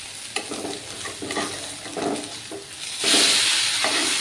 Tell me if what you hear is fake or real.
real